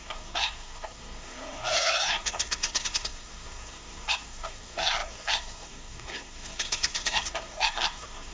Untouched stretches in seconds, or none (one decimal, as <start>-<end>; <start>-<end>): none